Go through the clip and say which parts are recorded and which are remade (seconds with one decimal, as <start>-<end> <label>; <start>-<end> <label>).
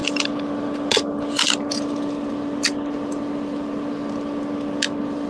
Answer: 0.0-5.3 recorded